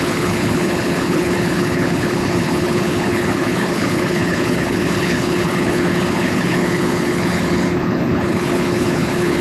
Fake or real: fake